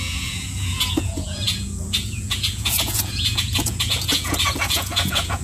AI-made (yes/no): yes